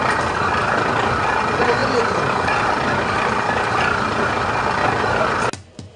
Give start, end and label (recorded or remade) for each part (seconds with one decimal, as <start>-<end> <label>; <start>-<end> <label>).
0.0-6.0 recorded